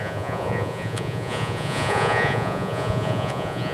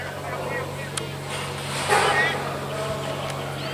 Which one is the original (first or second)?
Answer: second